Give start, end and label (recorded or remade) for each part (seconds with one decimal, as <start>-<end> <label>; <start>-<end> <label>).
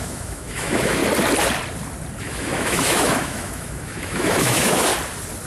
0.0-1.0 remade; 1.0-2.2 recorded; 2.2-4.9 remade; 4.9-5.5 recorded